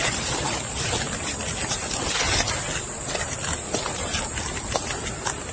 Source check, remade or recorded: recorded